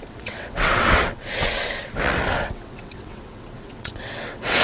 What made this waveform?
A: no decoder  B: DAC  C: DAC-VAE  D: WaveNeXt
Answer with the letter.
D